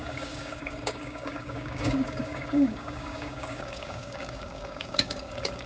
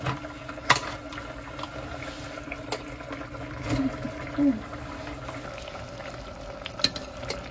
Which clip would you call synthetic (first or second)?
first